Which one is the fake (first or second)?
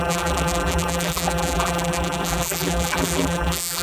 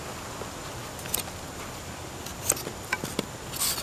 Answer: first